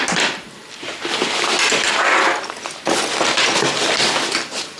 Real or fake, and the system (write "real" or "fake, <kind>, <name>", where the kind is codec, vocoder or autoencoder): real